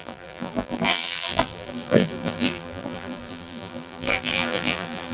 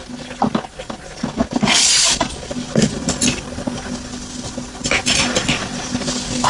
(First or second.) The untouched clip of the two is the second